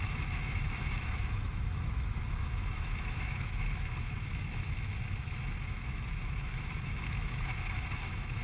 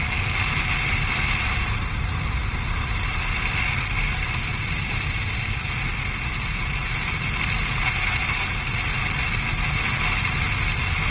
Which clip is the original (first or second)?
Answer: second